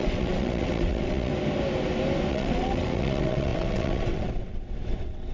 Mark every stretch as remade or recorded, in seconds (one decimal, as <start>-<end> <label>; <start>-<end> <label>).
0.0-1.3 remade; 1.3-2.3 recorded; 2.3-5.3 remade